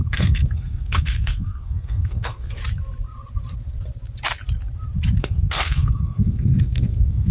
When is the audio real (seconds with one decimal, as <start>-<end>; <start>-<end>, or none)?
2.6-5.2